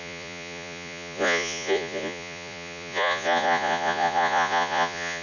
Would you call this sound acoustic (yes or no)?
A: no